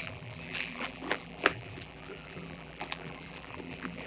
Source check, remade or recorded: remade